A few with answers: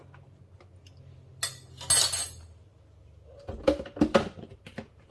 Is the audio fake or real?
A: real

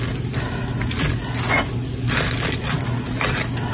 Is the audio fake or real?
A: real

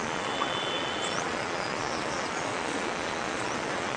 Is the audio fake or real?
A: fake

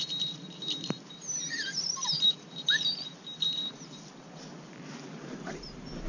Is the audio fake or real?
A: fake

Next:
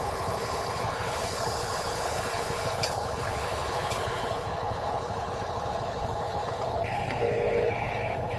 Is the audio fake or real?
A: fake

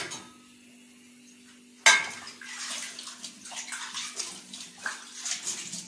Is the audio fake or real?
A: real